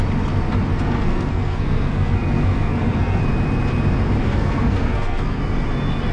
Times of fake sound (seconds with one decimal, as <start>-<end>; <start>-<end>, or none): 0.7-3.2; 4.2-5.4